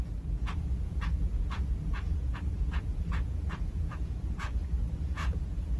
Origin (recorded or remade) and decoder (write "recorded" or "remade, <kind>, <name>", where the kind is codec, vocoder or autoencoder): remade, vocoder, Vocos